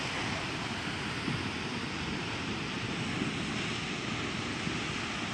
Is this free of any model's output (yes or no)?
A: yes